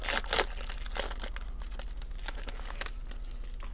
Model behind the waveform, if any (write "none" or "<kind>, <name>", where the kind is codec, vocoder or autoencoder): none